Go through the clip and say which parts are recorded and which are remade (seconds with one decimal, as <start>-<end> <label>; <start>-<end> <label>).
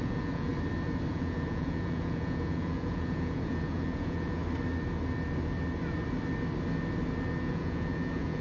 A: 0.0-0.5 remade; 0.5-1.1 recorded; 1.1-4.4 remade; 4.4-7.5 recorded; 7.5-8.4 remade